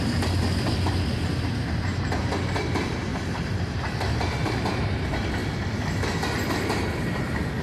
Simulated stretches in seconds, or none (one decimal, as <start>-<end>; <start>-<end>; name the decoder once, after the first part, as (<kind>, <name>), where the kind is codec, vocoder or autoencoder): 3.1-3.8 (vocoder, BigVGAN v2); 4.4-5.0